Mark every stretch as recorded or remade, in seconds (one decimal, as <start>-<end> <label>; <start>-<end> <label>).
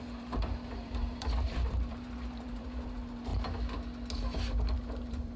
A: 0.0-3.3 remade; 3.3-4.7 recorded; 4.7-5.4 remade